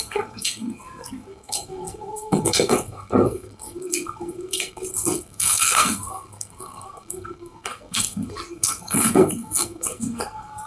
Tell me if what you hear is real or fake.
fake